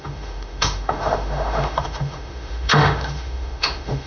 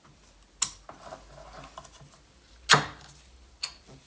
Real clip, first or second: second